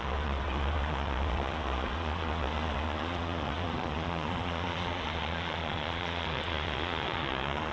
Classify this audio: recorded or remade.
remade